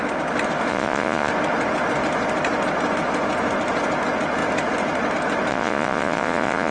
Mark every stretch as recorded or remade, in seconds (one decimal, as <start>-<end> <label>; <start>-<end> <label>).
0.0-0.7 recorded; 0.7-1.3 remade; 1.3-5.5 recorded; 5.5-6.7 remade